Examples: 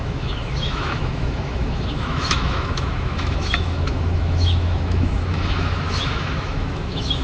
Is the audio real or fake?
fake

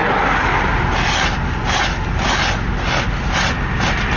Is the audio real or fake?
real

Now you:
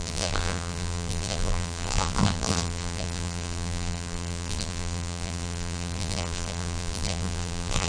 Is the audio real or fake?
fake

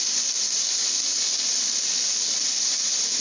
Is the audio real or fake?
real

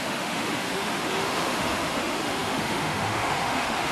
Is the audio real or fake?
fake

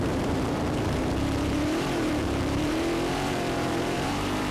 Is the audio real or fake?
fake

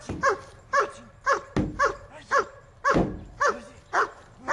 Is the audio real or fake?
real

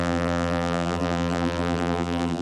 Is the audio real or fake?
fake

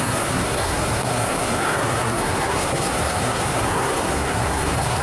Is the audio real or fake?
fake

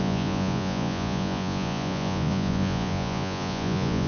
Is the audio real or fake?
fake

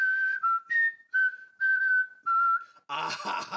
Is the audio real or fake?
real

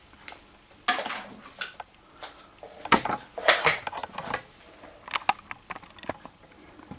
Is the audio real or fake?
real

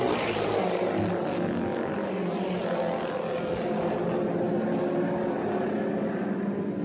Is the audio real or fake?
real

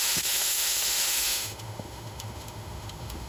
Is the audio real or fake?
fake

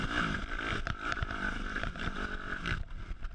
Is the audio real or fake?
real